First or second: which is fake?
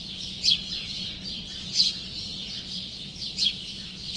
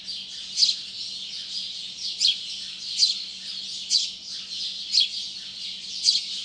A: first